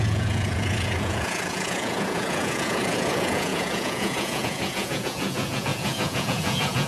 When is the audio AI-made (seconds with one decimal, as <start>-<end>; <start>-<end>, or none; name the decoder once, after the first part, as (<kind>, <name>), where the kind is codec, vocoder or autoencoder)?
0.0-6.9 (vocoder, Vocos)